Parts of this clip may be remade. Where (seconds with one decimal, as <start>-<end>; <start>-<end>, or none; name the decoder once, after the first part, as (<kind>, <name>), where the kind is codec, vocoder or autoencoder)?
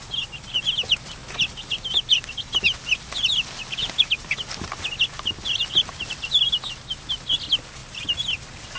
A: none